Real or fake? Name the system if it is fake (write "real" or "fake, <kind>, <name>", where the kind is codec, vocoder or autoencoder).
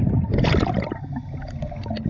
real